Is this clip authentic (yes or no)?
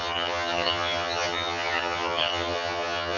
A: no